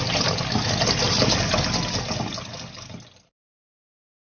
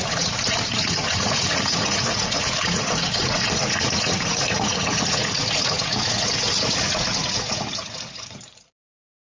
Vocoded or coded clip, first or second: second